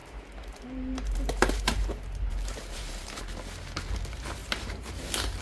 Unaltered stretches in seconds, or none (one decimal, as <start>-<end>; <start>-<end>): 3.2-4.4; 4.9-5.4